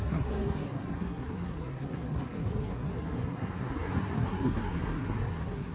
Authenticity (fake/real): fake